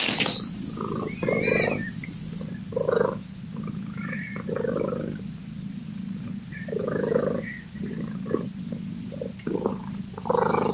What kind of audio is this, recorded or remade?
recorded